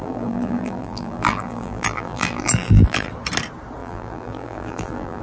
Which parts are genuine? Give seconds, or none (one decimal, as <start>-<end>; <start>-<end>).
3.1-3.8

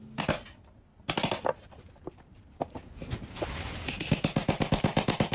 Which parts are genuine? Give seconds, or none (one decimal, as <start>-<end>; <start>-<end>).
0.0-5.3

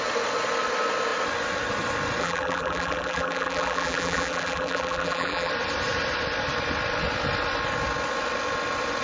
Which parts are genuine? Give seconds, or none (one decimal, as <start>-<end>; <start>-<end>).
0.0-2.2; 5.5-9.0

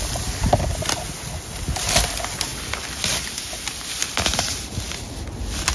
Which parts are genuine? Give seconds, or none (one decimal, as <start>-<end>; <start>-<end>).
0.0-2.5; 4.7-5.7

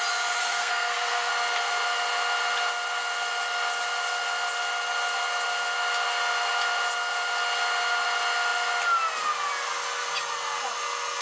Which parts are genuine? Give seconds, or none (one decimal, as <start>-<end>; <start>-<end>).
0.0-0.4; 1.3-11.2

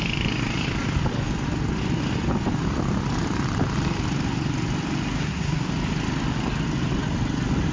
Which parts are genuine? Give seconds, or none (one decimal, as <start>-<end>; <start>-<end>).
0.0-5.2; 5.7-7.7